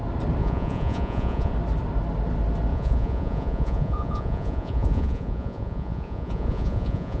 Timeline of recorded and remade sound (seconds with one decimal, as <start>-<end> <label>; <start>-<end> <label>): 0.0-0.4 recorded; 0.4-1.5 remade; 1.5-2.7 recorded; 2.7-7.2 remade